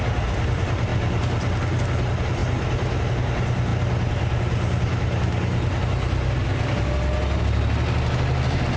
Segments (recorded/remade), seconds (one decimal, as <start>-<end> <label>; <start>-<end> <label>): 0.0-8.8 recorded